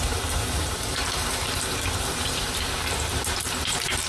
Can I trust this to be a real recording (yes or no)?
no